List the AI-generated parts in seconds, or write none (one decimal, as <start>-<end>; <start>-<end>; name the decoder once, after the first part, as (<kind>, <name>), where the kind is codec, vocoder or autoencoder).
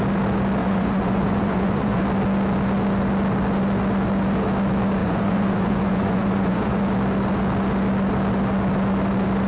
0.6-2.0 (vocoder, Vocos); 5.0-6.8